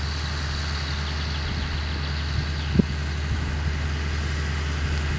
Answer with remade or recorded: recorded